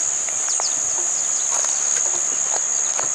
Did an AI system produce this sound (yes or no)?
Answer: no